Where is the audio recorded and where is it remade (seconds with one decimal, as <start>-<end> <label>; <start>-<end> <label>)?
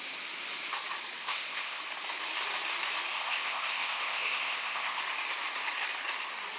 0.0-1.2 recorded; 1.2-1.8 remade; 1.8-3.1 recorded; 3.1-5.0 remade; 5.0-6.6 recorded